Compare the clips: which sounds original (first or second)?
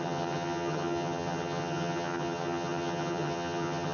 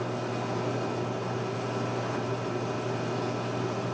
second